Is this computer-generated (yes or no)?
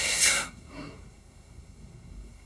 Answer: yes